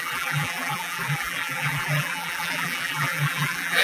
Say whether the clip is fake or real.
fake